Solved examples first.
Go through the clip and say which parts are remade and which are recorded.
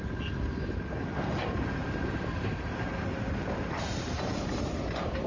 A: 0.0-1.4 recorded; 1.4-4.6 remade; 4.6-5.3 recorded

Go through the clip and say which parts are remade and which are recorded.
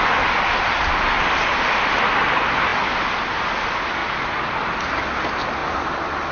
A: 0.0-2.7 recorded; 2.7-3.5 remade; 3.5-4.0 recorded; 4.0-4.9 remade; 4.9-5.6 recorded; 5.6-6.3 remade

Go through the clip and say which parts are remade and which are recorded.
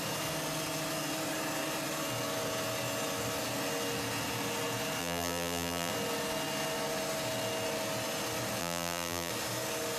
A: 0.0-5.0 recorded; 5.0-5.9 remade; 5.9-8.6 recorded; 8.6-9.3 remade; 9.3-10.0 recorded